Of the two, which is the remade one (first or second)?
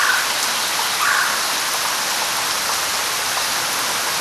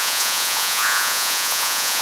second